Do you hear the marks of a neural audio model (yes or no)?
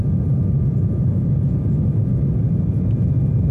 no